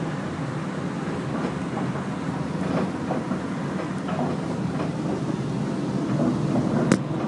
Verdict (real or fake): real